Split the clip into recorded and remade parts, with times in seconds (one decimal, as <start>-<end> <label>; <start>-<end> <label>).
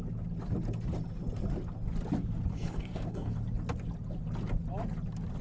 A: 0.0-2.5 recorded; 2.5-3.3 remade; 3.3-5.4 recorded